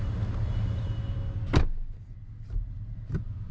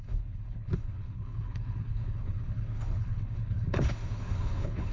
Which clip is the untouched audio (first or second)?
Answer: first